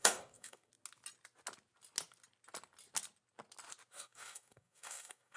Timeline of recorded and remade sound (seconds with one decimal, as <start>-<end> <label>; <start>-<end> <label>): 0.0-0.7 remade; 0.7-3.9 recorded; 3.9-5.4 remade